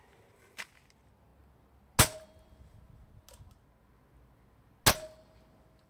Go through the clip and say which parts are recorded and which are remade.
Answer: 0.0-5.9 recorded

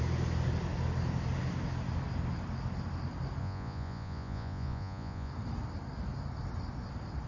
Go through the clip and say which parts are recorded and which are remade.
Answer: 0.0-3.4 recorded; 3.4-5.3 remade; 5.3-7.3 recorded